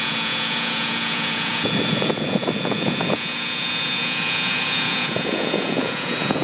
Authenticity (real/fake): fake